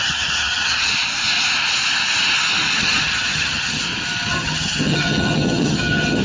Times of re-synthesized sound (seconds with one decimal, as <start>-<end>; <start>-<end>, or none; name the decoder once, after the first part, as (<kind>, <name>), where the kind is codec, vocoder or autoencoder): 0.0-0.9 (vocoder, HiFi-GAN); 2.8-3.8; 4.3-6.2